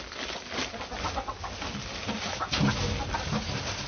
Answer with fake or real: real